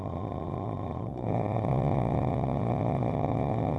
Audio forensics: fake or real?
fake